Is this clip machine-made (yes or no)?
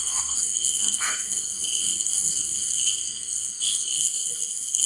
yes